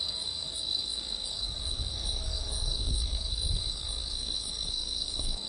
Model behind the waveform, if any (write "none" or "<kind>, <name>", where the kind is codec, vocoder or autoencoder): codec, SNAC